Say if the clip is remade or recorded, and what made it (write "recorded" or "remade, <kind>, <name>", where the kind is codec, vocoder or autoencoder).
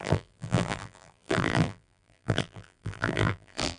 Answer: remade, vocoder, BigVGAN v2